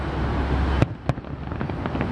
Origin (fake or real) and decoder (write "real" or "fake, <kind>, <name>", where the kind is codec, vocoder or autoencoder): real